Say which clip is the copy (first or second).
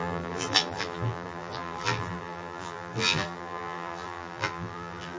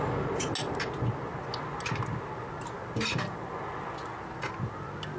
first